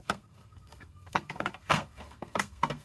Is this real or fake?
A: fake